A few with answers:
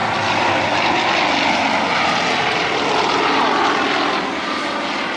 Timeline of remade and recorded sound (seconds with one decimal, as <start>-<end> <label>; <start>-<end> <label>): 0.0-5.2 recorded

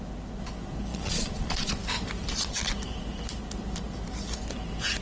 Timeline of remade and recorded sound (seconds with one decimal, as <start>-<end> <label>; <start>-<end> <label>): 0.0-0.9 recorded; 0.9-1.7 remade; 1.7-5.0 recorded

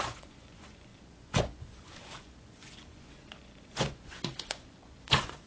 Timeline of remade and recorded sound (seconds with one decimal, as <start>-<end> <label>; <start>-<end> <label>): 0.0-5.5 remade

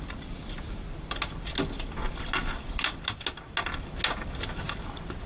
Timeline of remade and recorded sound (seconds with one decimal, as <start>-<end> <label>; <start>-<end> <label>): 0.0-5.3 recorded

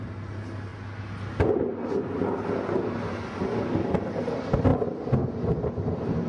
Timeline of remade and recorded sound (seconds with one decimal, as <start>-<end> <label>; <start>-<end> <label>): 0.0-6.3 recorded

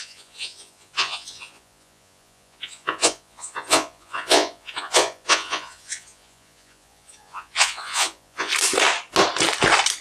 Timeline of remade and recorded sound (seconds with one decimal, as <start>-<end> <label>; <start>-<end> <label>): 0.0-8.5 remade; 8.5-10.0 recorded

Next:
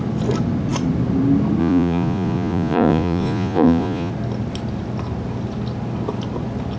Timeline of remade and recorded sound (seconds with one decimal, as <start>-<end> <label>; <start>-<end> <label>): 0.0-1.6 recorded; 1.6-4.1 remade; 4.1-6.8 recorded

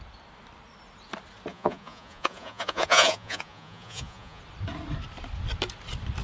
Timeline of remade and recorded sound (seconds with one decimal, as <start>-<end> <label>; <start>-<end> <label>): 0.0-1.5 recorded; 1.5-4.4 remade; 4.4-6.2 recorded